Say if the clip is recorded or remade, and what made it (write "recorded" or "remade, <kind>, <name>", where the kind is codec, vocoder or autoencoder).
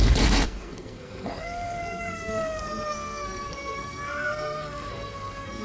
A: remade, codec, SNAC